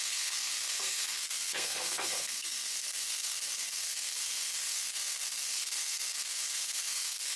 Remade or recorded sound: remade